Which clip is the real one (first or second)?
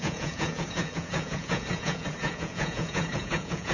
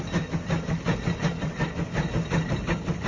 second